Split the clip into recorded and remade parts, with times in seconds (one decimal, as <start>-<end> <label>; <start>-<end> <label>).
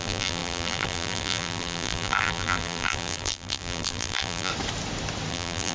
0.0-4.5 remade; 4.5-5.3 recorded; 5.3-5.7 remade